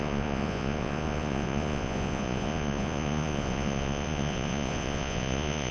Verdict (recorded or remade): remade